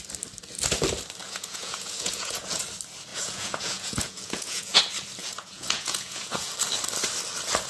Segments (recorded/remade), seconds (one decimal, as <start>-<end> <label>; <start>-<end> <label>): 0.0-1.2 recorded; 1.2-2.6 remade; 2.6-3.1 recorded; 3.1-4.8 remade; 4.8-5.2 recorded; 5.2-6.5 remade; 6.5-7.7 recorded